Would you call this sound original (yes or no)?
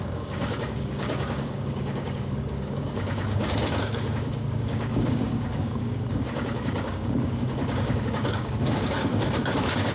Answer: no